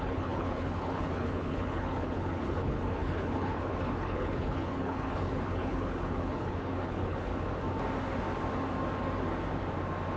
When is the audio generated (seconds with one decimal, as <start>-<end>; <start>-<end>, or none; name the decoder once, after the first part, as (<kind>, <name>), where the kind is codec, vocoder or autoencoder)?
0.0-7.3 (codec, HILCodec)